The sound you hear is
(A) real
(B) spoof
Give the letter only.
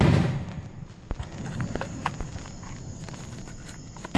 A